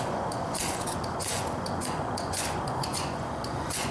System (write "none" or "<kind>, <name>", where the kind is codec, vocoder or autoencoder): vocoder, Vocos